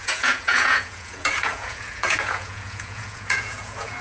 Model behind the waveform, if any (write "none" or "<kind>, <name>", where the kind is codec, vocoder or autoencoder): vocoder, Vocos